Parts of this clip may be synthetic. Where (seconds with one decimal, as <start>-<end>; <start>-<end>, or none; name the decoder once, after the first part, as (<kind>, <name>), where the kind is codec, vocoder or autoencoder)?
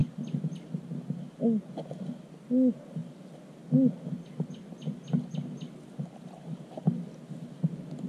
none